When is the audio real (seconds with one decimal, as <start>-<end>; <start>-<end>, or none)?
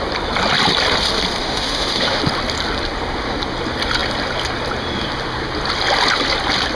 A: 0.0-1.4; 2.2-6.8